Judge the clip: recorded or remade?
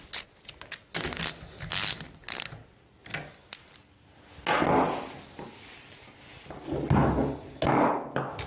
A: recorded